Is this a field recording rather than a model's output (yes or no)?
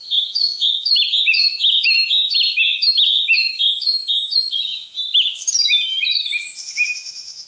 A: no